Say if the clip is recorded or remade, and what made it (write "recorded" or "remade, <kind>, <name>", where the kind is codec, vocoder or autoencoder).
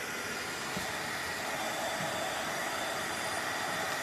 remade, vocoder, BigVGAN v2